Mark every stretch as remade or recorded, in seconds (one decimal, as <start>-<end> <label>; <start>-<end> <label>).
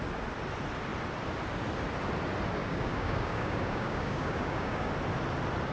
0.0-2.6 recorded; 2.6-4.9 remade; 4.9-5.7 recorded